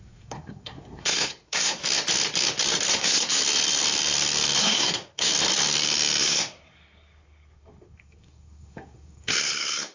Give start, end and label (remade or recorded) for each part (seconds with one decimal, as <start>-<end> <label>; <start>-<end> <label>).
0.0-1.8 remade; 1.8-2.9 recorded; 2.9-3.4 remade; 3.4-4.6 recorded; 4.6-5.3 remade; 5.3-6.2 recorded; 6.2-9.9 remade